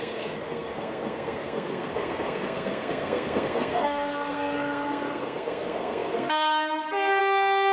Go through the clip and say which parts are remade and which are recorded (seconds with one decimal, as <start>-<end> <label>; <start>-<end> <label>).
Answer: 0.0-7.7 remade